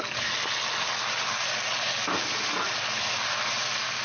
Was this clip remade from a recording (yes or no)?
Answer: no